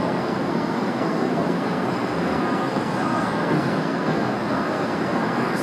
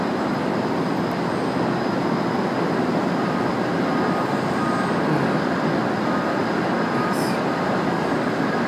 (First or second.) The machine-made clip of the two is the first